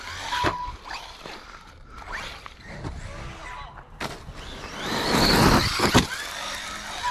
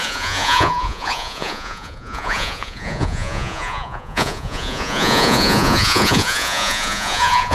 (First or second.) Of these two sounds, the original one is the first